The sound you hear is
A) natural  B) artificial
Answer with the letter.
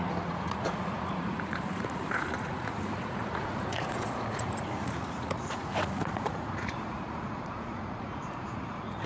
B